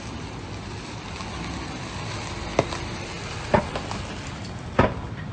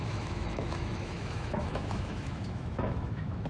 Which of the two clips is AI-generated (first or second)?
second